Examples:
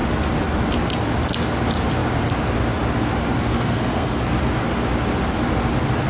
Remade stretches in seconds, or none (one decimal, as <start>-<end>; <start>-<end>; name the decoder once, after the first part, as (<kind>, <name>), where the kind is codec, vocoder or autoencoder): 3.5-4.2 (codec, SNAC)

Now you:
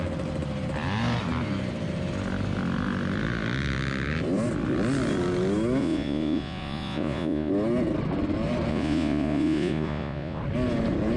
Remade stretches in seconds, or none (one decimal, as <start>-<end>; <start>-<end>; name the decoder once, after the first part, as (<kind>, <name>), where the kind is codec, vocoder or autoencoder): 5.8-7.5 (vocoder, Vocos); 8.7-10.4

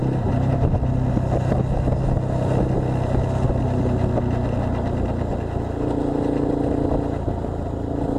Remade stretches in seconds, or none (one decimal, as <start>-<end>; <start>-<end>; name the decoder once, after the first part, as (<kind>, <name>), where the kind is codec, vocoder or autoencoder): 0.0-0.7 (vocoder, BigVGAN v2)